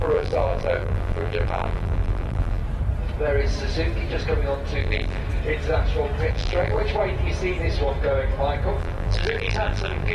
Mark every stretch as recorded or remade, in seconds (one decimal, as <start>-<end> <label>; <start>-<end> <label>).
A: 0.0-2.6 remade; 2.6-4.8 recorded; 4.8-5.2 remade; 5.2-6.3 recorded; 6.3-6.8 remade; 6.8-8.8 recorded; 8.8-10.1 remade